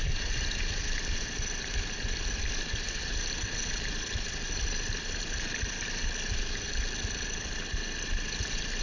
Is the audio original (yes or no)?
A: yes